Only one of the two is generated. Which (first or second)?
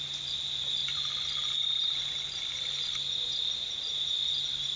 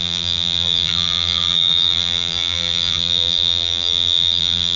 second